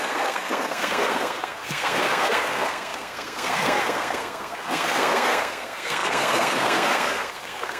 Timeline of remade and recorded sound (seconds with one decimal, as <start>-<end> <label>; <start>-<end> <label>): 0.0-7.8 remade